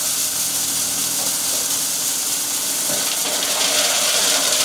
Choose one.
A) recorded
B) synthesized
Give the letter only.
A